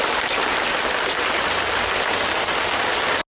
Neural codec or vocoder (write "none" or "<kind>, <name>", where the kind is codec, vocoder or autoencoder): none